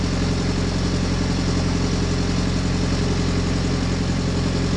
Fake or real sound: real